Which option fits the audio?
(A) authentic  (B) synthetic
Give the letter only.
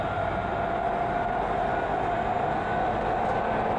A